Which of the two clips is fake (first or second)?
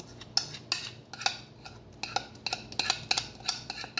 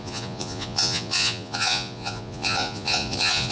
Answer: second